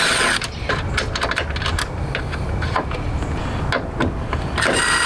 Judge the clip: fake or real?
real